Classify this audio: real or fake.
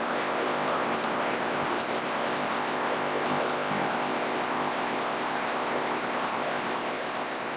fake